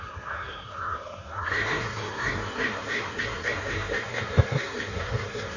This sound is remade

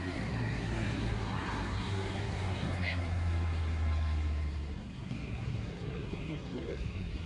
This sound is remade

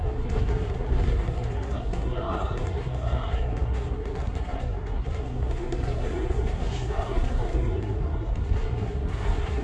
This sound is remade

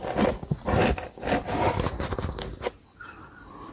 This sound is recorded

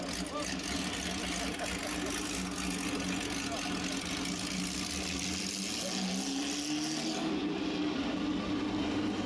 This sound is recorded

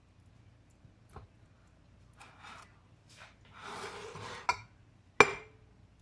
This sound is recorded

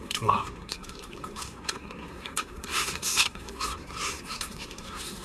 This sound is remade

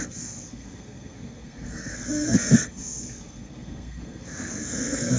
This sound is remade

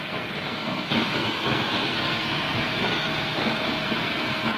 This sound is remade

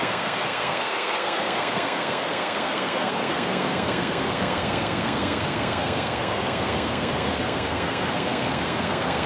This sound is remade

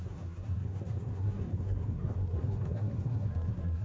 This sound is remade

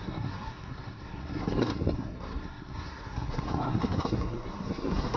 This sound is remade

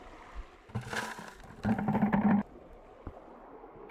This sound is recorded